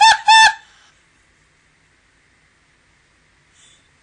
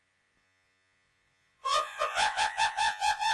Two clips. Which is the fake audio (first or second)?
second